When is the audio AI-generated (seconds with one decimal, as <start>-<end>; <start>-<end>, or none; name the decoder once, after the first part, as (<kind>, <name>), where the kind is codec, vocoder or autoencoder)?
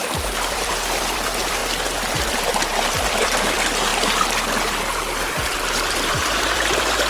0.0-1.6 (vocoder, BigVGAN v2); 2.1-3.9; 5.4-7.1